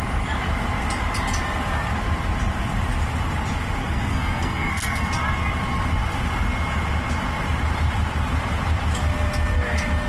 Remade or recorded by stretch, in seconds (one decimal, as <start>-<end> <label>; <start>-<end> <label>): 0.0-3.8 recorded; 3.8-5.0 remade; 5.0-10.1 recorded